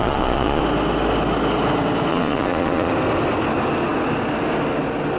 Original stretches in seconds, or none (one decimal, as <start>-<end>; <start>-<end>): 0.6-2.1; 2.9-5.2